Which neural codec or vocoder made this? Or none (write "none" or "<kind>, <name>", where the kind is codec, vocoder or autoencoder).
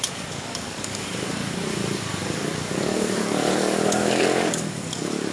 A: codec, DAC